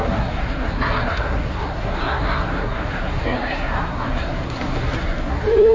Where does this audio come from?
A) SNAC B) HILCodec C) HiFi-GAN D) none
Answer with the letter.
A